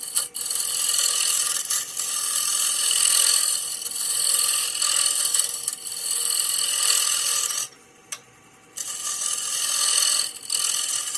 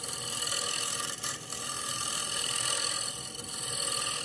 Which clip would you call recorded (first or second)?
first